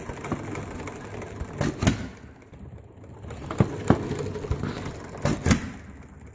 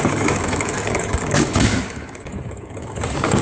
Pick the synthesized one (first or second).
second